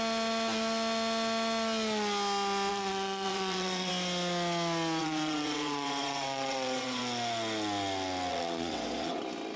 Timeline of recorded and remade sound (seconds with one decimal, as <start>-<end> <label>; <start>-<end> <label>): 0.0-2.7 recorded; 2.7-3.9 remade; 3.9-5.0 recorded; 5.0-7.0 remade; 7.0-8.3 recorded; 8.3-9.2 remade; 9.2-9.6 recorded